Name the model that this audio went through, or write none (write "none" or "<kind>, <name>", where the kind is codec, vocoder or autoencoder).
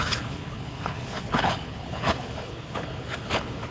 codec, HILCodec